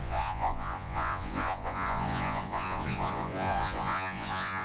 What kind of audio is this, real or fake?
fake